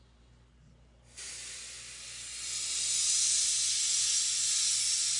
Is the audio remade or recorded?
recorded